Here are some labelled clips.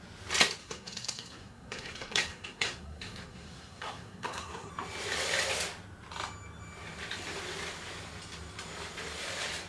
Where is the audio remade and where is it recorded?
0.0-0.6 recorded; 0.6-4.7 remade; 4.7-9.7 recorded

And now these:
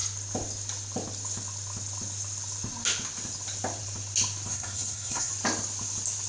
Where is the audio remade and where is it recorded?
0.0-4.5 recorded; 4.5-5.3 remade; 5.3-6.3 recorded